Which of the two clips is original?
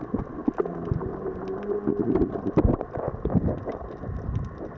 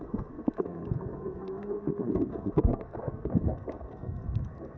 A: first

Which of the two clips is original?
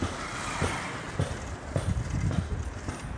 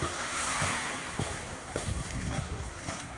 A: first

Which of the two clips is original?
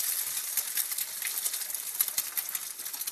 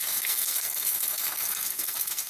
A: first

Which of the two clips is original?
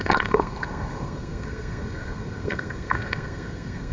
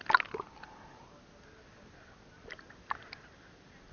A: second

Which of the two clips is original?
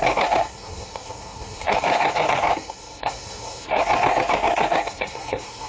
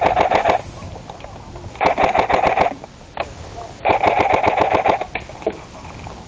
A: second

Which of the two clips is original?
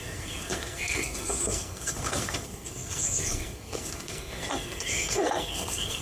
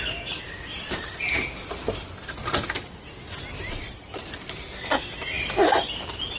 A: second